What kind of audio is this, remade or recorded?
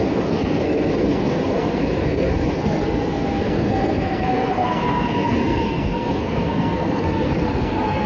remade